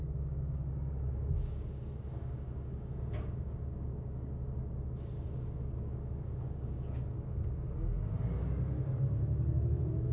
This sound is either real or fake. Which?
fake